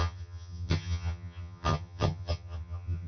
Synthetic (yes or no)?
yes